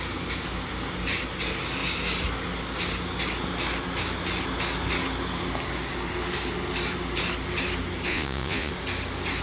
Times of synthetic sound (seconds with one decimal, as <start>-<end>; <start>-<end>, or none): 8.1-8.7